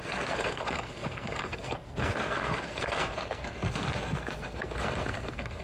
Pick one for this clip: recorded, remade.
remade